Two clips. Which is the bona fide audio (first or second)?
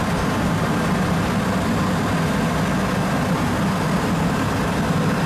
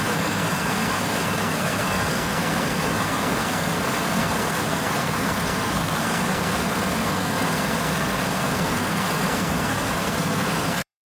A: first